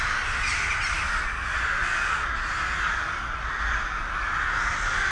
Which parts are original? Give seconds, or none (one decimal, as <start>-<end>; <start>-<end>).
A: 0.0-5.1